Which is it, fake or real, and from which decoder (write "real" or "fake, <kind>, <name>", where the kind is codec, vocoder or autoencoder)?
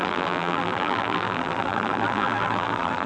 fake, vocoder, BigVGAN v2